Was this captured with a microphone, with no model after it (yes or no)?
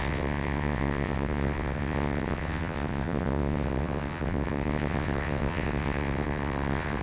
no